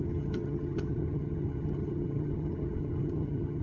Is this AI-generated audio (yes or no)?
yes